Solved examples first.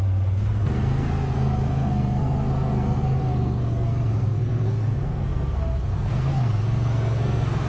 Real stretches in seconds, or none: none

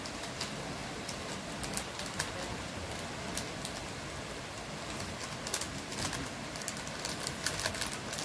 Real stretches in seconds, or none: 0.0-8.2